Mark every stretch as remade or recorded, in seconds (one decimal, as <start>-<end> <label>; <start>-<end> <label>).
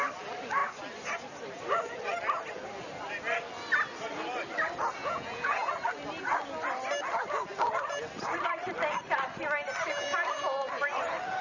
0.0-5.0 recorded; 5.0-5.7 remade; 5.7-11.4 recorded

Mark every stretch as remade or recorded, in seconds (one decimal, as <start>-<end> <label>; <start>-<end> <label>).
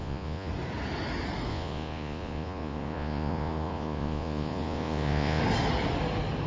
0.0-0.5 remade; 0.5-1.5 recorded; 1.5-5.4 remade; 5.4-6.5 recorded